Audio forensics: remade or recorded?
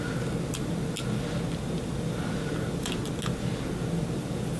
recorded